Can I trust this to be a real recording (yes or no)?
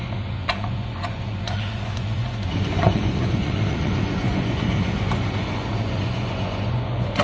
no